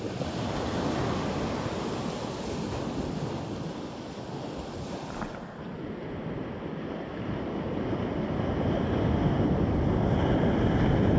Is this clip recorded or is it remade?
recorded